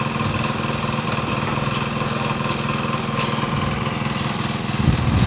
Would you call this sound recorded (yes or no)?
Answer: yes